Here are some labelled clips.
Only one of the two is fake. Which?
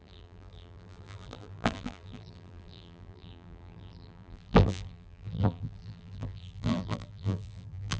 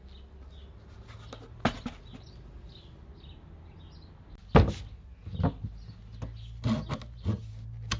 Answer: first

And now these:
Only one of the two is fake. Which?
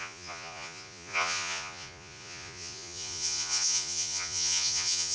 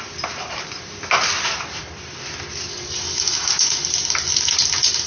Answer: first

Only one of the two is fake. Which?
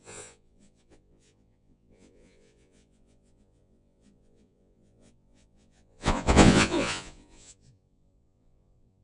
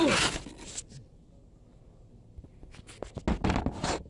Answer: first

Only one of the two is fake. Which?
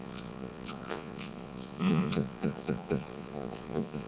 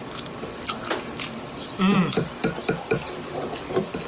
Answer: first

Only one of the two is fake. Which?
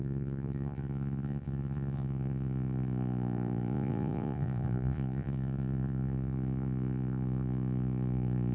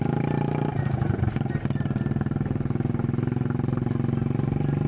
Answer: first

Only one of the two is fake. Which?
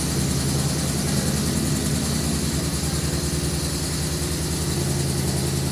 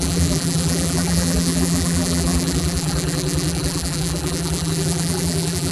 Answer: second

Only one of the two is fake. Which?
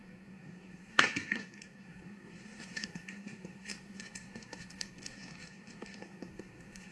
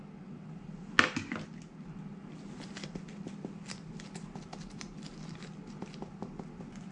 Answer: first